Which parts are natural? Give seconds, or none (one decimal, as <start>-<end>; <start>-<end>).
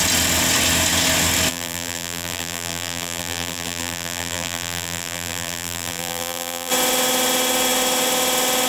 0.0-1.5; 6.7-8.7